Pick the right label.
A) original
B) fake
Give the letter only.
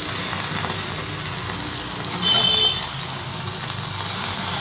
A